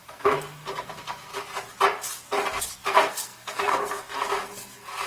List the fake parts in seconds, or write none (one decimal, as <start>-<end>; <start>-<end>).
0.0-1.3; 2.6-5.1